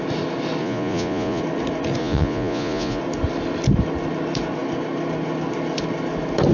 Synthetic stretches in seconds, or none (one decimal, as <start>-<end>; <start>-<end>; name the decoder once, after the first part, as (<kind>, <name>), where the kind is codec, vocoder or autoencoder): 0.6-1.4 (vocoder, Vocos); 2.0-3.0